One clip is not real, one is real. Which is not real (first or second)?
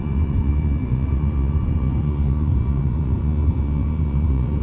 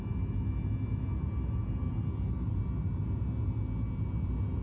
first